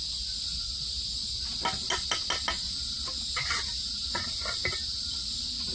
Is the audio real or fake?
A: real